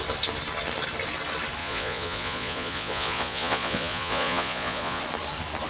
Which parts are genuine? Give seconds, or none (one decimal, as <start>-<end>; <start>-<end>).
0.0-1.6; 5.0-5.7